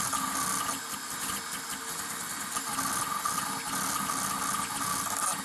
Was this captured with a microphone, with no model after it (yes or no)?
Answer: yes